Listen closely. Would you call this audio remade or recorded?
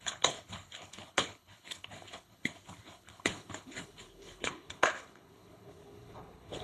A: remade